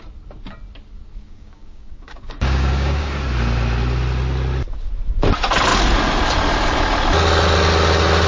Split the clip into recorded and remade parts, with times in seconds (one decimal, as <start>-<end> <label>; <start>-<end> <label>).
0.0-1.2 recorded; 1.2-3.1 remade; 3.1-8.3 recorded